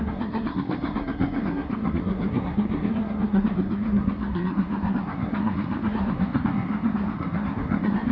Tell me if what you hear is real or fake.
fake